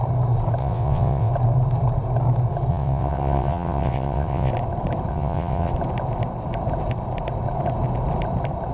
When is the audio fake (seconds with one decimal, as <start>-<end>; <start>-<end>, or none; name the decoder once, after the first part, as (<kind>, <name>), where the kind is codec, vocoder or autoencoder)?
0.6-1.3 (vocoder, WaveNeXt); 2.7-4.5; 5.1-5.7